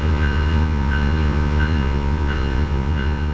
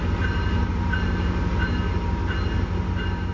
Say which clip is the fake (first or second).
first